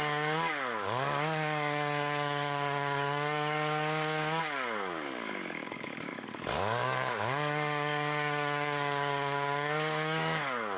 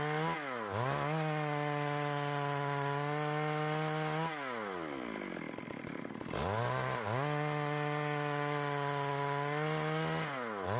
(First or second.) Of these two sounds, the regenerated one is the first